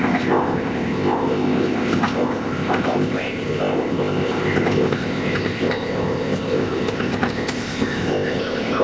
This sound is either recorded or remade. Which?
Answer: remade